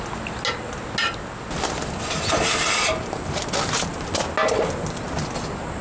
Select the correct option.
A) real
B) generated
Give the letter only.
A